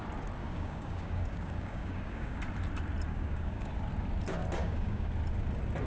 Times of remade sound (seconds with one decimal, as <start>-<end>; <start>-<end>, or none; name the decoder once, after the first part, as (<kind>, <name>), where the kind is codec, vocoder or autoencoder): 0.4-2.4 (codec, DAC); 3.1-3.7; 4.6-5.1